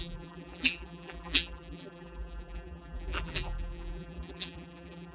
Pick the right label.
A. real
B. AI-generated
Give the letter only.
B